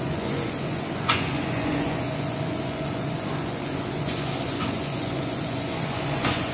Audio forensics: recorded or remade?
remade